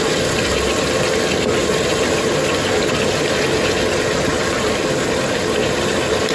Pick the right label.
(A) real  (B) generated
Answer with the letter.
A